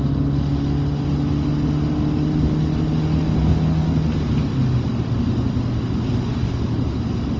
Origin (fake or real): real